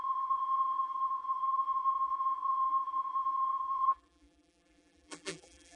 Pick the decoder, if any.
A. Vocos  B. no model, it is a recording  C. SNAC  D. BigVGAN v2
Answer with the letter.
D